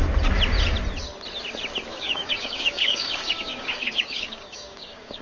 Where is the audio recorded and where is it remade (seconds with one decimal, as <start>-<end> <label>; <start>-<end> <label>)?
0.0-1.9 recorded; 1.9-5.2 remade